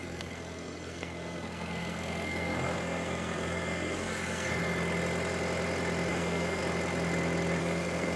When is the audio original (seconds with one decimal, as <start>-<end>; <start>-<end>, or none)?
4.6-6.1; 6.6-7.6